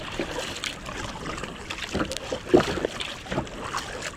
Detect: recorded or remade recorded